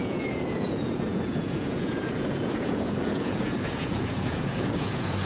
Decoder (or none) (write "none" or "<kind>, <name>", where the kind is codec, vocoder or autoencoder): vocoder, Vocos